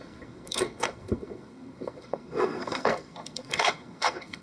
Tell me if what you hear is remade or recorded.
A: remade